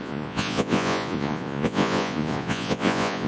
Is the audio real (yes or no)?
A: no